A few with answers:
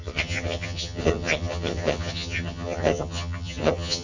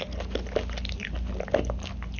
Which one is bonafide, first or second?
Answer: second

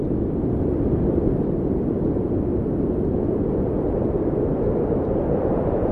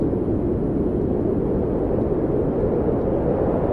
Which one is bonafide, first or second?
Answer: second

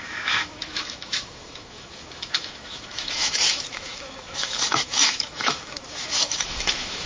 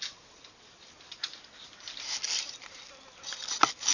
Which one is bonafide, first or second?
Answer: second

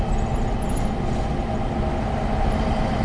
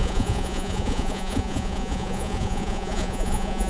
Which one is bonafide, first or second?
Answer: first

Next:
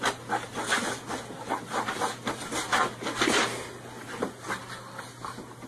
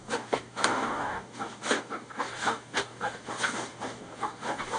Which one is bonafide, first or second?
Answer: first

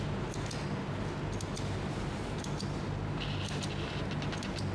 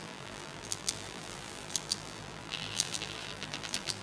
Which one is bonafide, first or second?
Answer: first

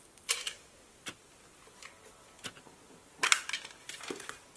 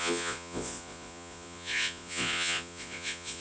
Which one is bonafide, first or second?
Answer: first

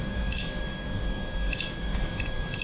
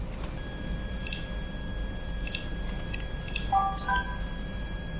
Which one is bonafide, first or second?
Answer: second